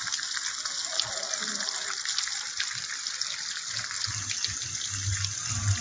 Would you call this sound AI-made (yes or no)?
no